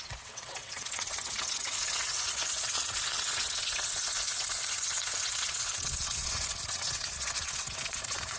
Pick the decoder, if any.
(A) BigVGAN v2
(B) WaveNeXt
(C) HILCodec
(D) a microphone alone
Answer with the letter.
B